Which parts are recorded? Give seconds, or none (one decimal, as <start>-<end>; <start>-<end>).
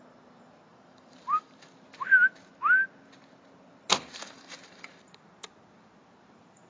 0.0-0.7; 1.7-3.9; 5.1-6.7